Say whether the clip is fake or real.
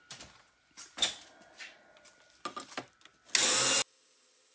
real